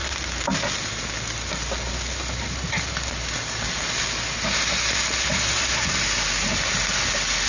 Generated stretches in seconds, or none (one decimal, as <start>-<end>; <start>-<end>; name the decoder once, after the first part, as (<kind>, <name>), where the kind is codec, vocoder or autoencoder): none